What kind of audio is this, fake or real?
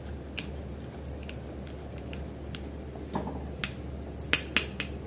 real